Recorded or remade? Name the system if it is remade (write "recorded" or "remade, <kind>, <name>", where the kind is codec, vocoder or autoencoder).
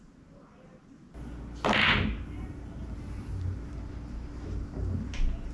recorded